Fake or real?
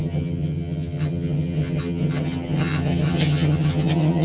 fake